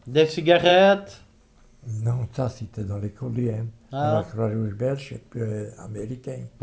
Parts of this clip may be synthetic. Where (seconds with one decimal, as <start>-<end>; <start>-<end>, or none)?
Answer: 5.5-6.1